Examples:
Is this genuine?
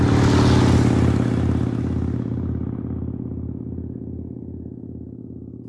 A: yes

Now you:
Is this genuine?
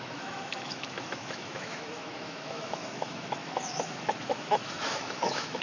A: no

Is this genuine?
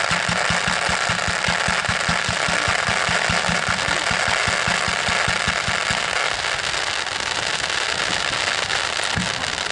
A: yes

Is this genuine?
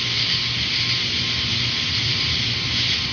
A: yes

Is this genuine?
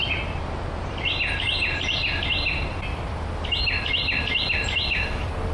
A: no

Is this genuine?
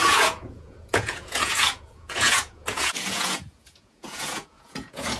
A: no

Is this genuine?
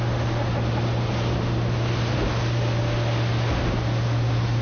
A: yes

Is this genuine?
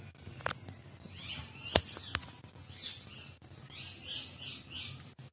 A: yes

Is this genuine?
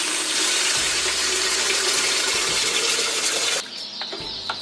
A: yes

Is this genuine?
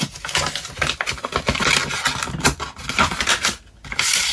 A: yes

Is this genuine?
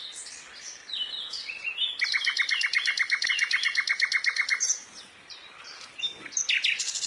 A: yes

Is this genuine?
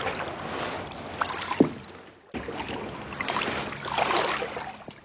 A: yes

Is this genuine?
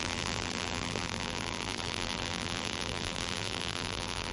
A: no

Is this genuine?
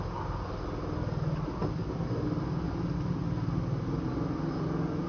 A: yes